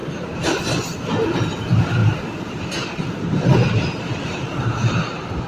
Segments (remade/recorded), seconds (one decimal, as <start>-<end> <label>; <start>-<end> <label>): 0.0-0.6 remade; 0.6-2.0 recorded; 2.0-4.6 remade; 4.6-5.5 recorded